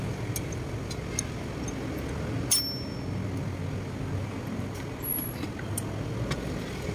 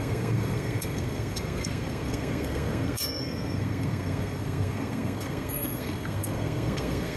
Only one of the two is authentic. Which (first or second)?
first